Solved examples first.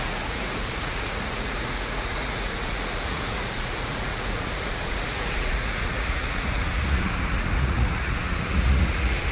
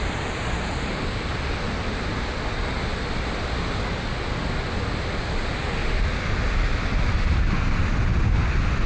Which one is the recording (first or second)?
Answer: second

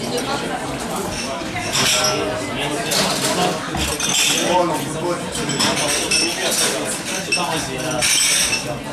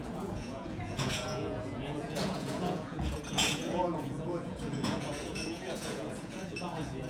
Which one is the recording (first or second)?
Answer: first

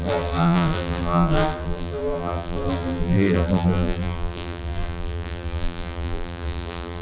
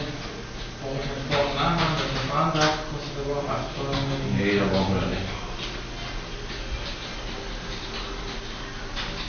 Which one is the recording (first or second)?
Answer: second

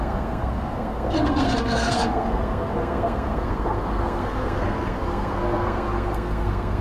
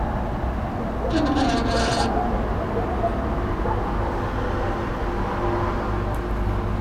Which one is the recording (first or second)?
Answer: second